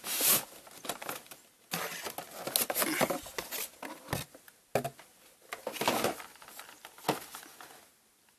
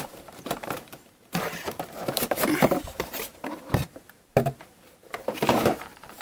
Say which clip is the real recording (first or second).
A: first